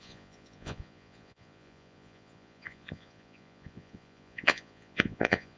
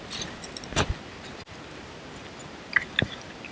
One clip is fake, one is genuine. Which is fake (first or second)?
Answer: first